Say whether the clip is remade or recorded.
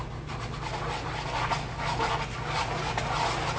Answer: remade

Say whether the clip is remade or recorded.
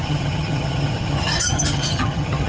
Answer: remade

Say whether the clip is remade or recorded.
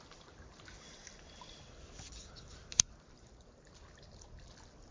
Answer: recorded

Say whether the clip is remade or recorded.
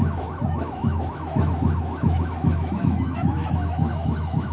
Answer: remade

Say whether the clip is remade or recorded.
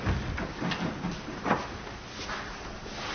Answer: recorded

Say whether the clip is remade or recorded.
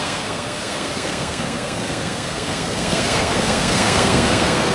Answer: remade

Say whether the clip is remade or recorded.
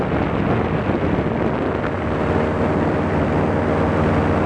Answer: recorded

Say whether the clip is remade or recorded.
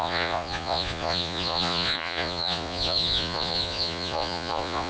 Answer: remade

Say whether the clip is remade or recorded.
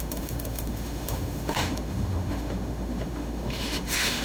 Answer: remade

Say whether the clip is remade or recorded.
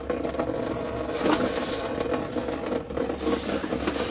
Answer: recorded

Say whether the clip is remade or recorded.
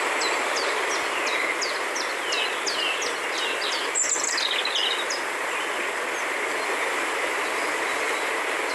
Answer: recorded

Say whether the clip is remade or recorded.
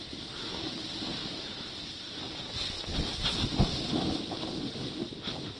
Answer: recorded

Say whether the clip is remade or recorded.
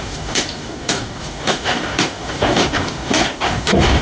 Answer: remade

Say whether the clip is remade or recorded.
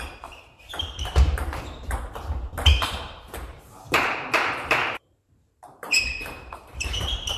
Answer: remade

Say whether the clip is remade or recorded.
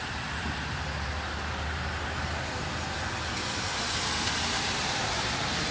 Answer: recorded